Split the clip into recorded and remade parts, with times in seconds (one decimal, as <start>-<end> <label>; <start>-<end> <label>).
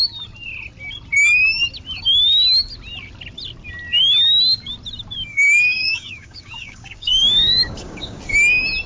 0.0-5.3 recorded; 5.3-8.2 remade; 8.2-8.9 recorded